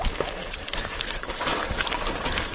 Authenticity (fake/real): fake